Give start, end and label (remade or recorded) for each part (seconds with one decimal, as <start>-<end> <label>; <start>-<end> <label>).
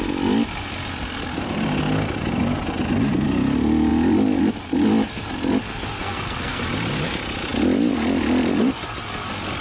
0.0-6.0 recorded; 6.0-6.6 remade; 6.6-9.6 recorded